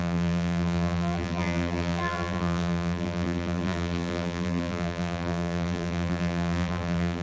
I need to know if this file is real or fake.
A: fake